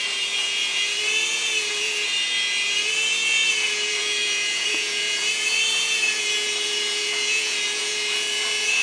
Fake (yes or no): yes